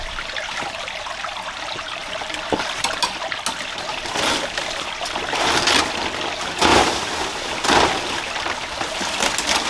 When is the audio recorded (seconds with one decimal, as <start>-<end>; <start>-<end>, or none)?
0.0-6.7; 7.5-9.7